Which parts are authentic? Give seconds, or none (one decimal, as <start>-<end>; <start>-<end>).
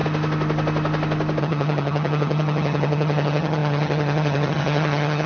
0.0-1.4